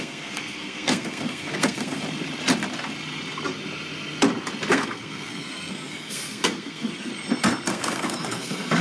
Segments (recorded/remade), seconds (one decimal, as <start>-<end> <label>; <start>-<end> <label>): 0.0-2.0 remade; 2.0-4.7 recorded; 4.7-7.1 remade; 7.1-7.7 recorded; 7.7-8.8 remade